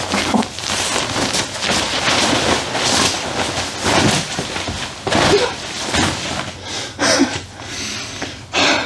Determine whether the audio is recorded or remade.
recorded